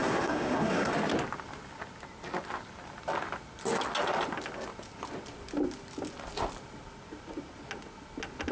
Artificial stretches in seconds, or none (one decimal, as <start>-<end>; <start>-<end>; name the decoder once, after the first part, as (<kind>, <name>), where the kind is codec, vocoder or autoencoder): 0.0-0.9 (codec, SNAC)